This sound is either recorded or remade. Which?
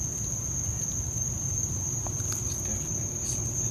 recorded